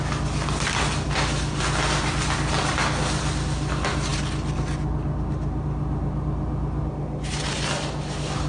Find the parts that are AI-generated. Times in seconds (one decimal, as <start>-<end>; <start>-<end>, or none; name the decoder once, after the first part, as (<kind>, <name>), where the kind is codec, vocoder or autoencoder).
none